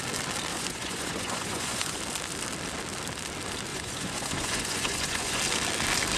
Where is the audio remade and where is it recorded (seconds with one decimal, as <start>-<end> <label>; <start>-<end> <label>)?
0.0-0.5 recorded; 0.5-2.0 remade; 2.0-3.7 recorded; 3.7-5.4 remade; 5.4-6.2 recorded